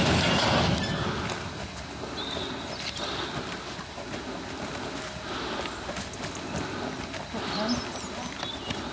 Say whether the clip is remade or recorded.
recorded